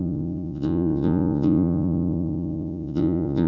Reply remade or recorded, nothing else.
remade